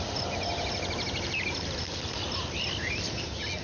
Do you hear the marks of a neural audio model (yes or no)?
no